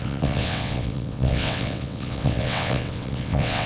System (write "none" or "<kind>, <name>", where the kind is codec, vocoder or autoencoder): vocoder, WaveNeXt